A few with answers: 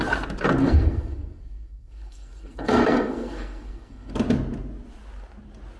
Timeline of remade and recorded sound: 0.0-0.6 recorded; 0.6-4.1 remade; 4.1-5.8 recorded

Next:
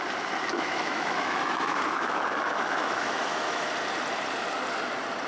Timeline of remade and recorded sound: 0.0-0.5 recorded; 0.5-3.7 remade; 3.7-5.3 recorded

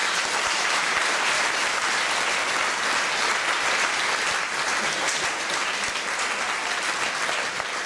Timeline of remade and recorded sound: 0.0-2.0 remade; 2.0-7.9 recorded